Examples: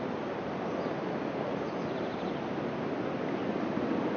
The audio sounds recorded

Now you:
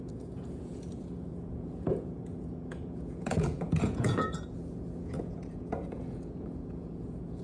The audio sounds remade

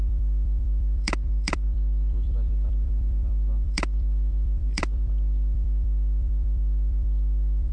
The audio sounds remade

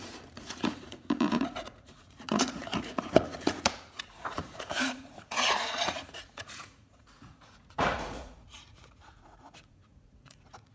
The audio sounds remade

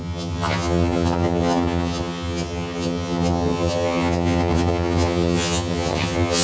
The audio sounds remade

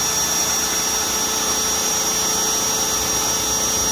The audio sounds recorded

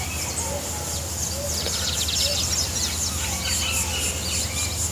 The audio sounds recorded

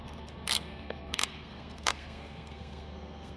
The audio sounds remade